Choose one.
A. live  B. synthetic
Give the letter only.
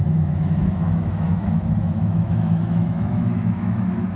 B